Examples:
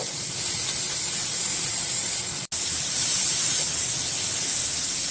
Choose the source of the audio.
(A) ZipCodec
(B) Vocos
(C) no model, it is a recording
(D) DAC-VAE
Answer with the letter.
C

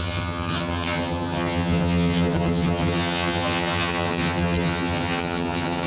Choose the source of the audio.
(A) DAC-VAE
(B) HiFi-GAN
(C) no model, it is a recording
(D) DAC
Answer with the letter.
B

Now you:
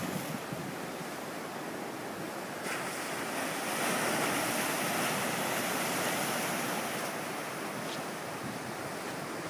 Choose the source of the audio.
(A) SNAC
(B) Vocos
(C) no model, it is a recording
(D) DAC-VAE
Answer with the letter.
C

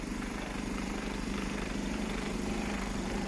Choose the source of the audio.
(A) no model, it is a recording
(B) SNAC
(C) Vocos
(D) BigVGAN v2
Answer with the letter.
D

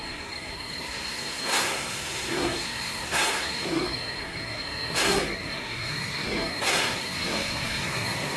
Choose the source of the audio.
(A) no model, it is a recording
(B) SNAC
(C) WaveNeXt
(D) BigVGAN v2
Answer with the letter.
B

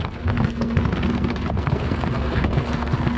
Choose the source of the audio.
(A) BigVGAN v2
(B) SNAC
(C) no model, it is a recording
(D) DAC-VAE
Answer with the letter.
B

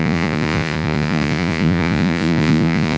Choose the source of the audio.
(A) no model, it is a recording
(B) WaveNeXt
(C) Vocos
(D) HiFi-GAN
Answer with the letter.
C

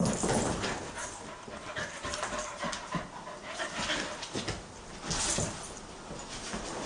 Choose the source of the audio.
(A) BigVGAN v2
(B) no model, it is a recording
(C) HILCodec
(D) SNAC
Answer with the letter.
B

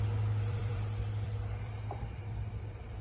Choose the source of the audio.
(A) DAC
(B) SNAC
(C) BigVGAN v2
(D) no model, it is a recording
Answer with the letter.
C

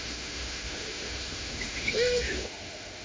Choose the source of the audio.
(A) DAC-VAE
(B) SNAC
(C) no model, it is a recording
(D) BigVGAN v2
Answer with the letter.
A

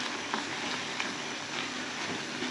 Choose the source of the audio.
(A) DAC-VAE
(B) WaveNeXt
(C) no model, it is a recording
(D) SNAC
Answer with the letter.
C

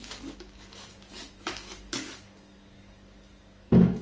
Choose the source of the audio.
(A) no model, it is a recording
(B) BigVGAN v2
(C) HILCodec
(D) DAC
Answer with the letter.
D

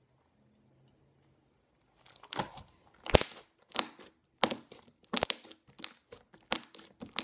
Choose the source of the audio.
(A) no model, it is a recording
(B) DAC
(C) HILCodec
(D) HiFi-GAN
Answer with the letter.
A